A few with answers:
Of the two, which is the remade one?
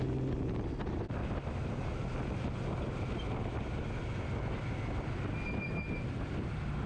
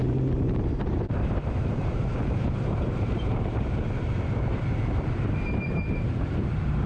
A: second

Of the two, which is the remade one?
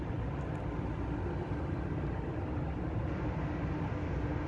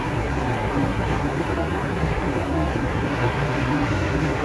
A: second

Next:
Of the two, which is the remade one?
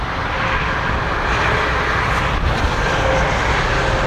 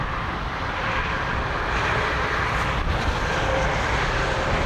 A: second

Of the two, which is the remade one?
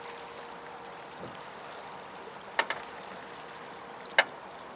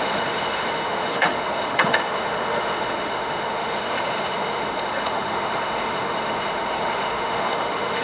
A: second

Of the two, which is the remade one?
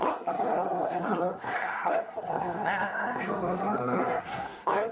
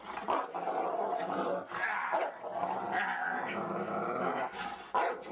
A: first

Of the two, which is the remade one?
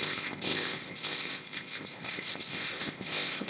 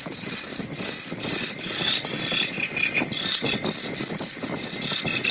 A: first